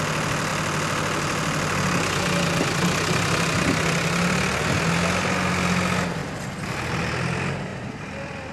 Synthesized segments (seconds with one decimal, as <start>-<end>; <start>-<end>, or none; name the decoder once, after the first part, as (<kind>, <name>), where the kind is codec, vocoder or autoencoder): 7.7-8.5 (vocoder, BigVGAN v2)

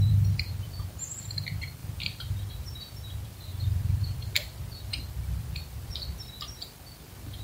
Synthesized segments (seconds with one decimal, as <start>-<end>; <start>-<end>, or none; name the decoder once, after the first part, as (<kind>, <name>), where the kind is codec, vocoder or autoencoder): 0.0-7.4 (vocoder, BigVGAN v2)

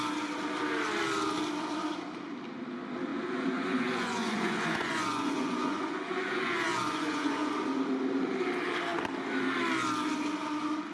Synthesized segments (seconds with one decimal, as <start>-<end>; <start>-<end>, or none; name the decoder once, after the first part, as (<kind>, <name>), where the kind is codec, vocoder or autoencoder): 3.1-7.5 (vocoder, Vocos)

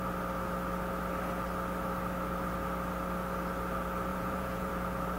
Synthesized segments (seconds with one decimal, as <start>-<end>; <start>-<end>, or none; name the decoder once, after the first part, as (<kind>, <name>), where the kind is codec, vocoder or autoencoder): 4.1-4.7 (vocoder, Vocos)